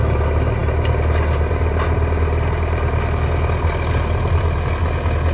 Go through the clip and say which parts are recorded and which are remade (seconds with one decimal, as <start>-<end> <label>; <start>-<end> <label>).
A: 0.0-5.3 recorded

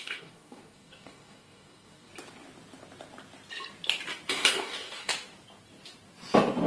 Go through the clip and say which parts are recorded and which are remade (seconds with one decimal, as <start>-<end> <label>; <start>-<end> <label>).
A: 0.0-2.1 remade; 2.1-4.3 recorded; 4.3-5.1 remade; 5.1-6.7 recorded

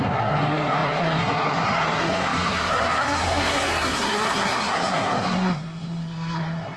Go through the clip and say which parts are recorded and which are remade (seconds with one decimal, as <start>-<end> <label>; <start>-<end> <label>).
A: 0.0-6.8 remade

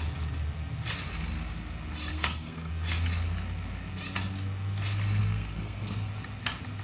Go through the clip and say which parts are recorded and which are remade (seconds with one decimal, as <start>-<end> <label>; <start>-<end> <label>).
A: 0.0-2.1 recorded; 2.1-2.7 remade; 2.7-5.2 recorded; 5.2-6.1 remade; 6.1-6.8 recorded